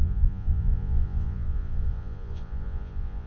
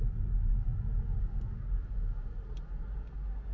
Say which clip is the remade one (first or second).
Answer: first